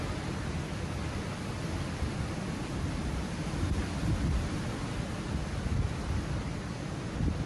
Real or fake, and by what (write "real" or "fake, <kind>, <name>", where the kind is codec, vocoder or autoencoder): fake, vocoder, BigVGAN v2